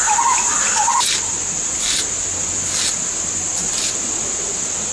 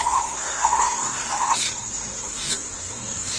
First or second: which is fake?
second